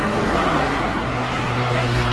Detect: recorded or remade remade